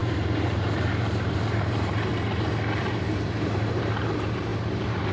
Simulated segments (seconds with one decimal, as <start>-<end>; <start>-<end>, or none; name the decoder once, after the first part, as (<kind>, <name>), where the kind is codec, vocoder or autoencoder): 0.0-2.1 (vocoder, BigVGAN v2); 2.8-5.1